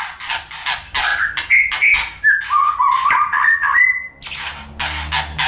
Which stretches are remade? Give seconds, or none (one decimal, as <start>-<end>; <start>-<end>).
none